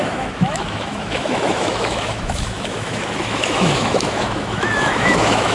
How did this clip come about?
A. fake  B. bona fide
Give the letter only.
A